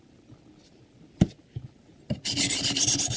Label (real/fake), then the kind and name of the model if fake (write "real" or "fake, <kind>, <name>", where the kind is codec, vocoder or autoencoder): real